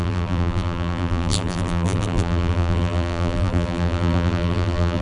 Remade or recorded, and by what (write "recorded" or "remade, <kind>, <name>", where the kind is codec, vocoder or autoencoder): remade, vocoder, BigVGAN v2